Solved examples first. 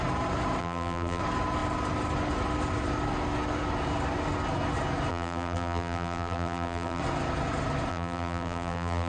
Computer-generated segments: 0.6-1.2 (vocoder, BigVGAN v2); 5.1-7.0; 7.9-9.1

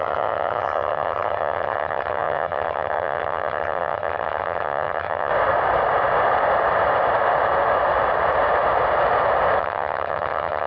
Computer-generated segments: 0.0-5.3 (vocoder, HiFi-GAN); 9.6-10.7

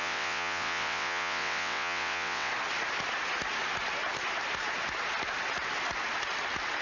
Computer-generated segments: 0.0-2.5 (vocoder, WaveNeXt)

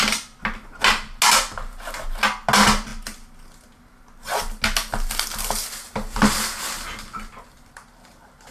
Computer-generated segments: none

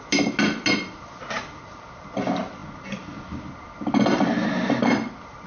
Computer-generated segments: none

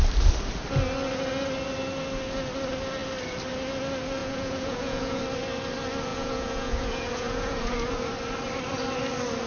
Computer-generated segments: 4.2-5.2 (vocoder, Vocos); 6.1-7.9